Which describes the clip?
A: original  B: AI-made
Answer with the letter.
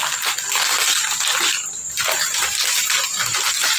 A